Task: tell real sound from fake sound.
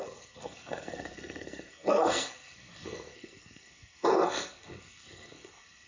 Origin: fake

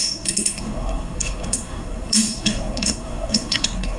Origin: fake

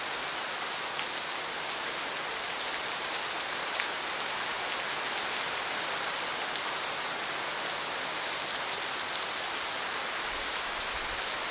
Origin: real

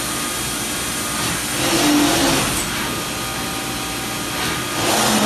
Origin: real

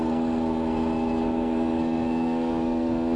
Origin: fake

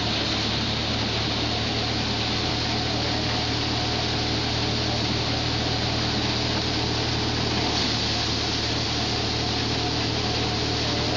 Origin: real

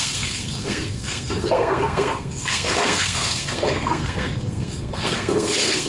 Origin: fake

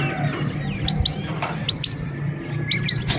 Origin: real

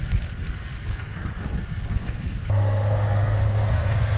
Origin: fake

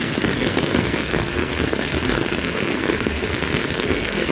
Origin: fake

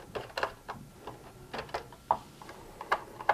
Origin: real